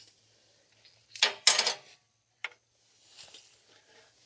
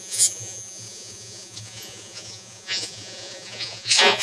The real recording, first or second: first